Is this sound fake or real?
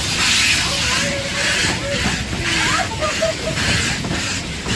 real